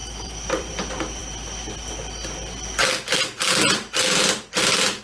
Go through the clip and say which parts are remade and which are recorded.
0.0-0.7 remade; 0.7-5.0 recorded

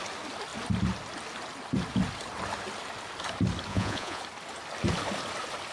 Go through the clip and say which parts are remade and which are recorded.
0.0-3.7 recorded; 3.7-4.2 remade; 4.2-5.7 recorded

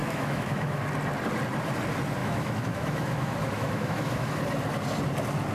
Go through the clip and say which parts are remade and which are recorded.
0.0-0.8 remade; 0.8-2.2 recorded; 2.2-4.4 remade; 4.4-5.5 recorded

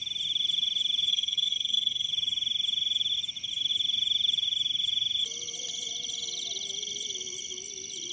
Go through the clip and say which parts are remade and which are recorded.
0.0-1.1 recorded; 1.1-2.1 remade; 2.1-8.1 recorded